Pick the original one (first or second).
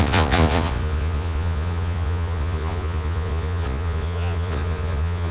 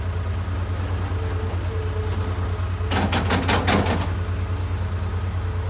second